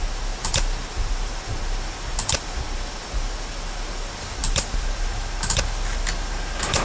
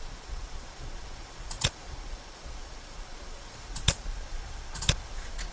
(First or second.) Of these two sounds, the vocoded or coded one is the second